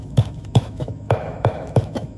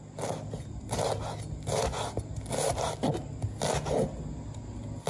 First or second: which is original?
second